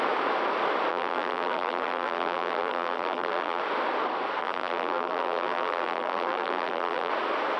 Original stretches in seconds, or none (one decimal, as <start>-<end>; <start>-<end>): 0.0-0.9; 3.6-4.4; 7.1-7.6